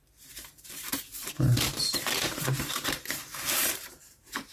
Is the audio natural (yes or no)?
no